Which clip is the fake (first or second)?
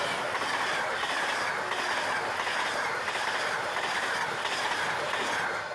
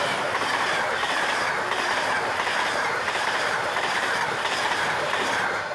second